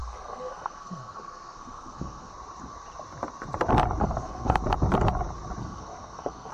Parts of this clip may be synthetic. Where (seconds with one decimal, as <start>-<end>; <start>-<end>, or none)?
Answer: 0.0-2.3; 4.0-4.6; 5.6-6.5